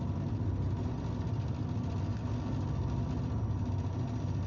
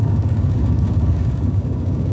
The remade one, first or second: second